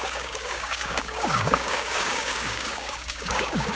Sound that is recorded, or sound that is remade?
remade